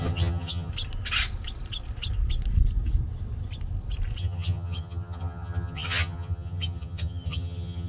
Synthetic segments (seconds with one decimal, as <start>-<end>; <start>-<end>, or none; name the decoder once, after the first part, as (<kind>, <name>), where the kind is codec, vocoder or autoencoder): 0.0-0.7 (vocoder, HiFi-GAN); 4.2-7.9